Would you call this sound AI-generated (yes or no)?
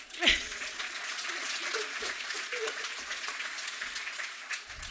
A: yes